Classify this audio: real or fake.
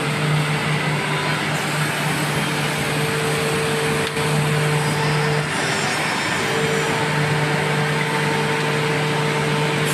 real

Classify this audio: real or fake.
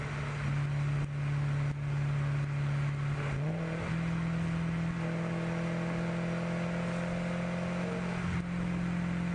real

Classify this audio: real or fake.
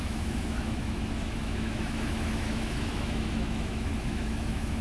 fake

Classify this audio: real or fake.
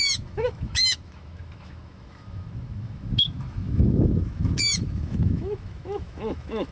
fake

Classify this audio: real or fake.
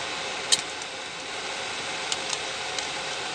real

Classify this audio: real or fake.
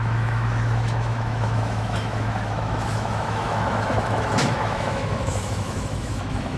fake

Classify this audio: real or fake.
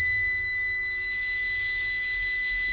real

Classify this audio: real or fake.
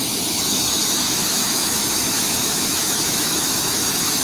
fake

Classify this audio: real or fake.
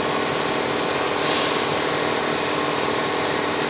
real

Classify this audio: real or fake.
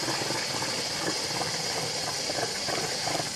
real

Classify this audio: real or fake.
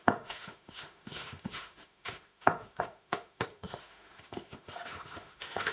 fake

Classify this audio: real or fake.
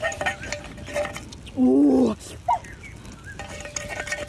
real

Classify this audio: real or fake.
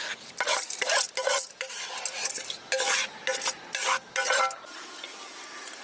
real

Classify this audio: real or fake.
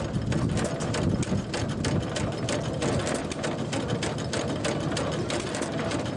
real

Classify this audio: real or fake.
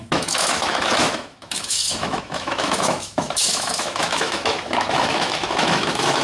fake